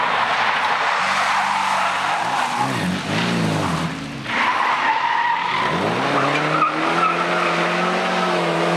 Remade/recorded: recorded